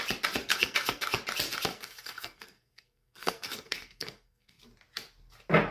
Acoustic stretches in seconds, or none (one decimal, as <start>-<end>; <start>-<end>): 0.0-0.4; 1.2-1.7; 4.6-5.7